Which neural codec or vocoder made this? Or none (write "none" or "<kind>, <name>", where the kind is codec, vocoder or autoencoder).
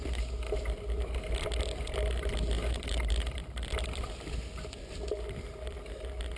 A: none